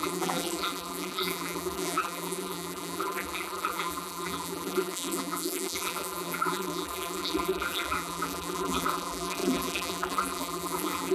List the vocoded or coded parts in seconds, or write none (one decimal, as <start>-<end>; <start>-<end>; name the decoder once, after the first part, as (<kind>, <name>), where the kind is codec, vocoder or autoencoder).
0.0-11.1 (vocoder, BigVGAN v2)